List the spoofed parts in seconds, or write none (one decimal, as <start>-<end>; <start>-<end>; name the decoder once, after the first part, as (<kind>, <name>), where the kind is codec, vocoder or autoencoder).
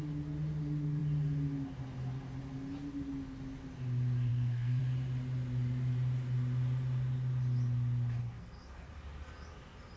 4.3-4.8 (codec, SNAC); 8.2-8.9